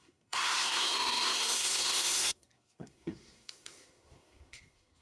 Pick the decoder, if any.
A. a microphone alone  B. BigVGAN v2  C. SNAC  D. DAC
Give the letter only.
C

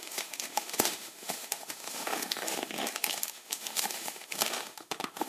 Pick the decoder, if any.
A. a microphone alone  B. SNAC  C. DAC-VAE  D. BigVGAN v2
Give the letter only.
C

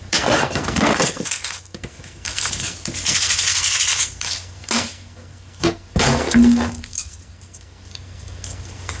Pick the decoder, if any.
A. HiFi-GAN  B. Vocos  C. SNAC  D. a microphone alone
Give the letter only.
C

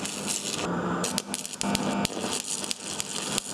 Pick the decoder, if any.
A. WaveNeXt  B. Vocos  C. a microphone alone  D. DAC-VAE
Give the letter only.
C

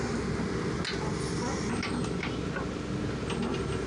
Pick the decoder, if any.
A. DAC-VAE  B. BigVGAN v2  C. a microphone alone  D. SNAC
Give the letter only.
C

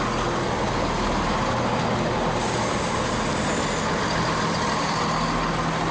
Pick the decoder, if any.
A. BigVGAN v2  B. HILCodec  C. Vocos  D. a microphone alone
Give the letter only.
D